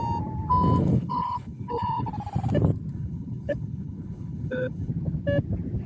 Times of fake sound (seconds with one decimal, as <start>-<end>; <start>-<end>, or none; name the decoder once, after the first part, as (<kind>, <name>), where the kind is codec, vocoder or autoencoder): 0.8-2.1 (codec, HILCodec); 2.9-4.9